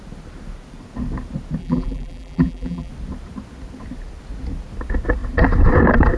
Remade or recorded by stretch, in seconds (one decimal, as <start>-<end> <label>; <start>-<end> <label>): 0.0-1.6 recorded; 1.6-2.9 remade; 2.9-6.2 recorded